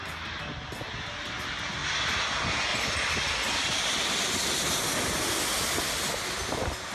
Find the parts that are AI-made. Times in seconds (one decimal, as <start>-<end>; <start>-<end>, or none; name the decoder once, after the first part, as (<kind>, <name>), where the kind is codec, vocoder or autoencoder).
1.8-2.3 (vocoder, BigVGAN v2); 2.7-4.9